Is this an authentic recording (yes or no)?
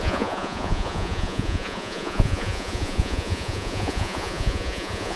no